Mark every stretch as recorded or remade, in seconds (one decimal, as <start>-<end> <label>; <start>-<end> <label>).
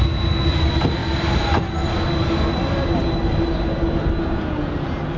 0.0-5.2 recorded